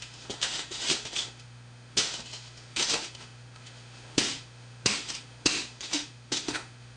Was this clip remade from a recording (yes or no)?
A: yes